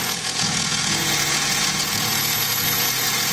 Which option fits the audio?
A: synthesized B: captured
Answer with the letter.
A